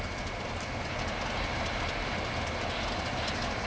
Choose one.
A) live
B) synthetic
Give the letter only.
A